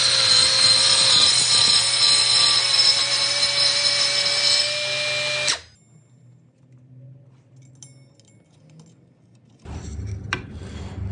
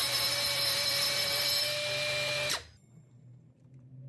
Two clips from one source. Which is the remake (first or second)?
second